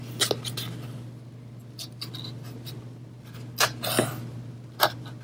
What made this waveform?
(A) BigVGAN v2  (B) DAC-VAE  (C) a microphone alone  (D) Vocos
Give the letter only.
C